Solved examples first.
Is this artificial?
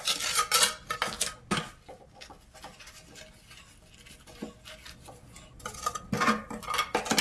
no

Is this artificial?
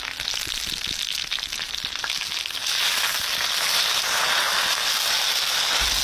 no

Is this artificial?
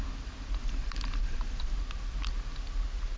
no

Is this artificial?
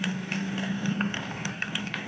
yes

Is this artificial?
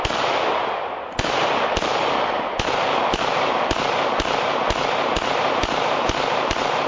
no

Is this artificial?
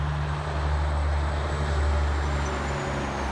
no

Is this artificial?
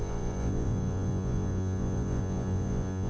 yes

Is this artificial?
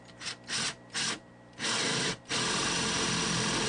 no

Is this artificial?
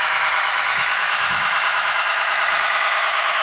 yes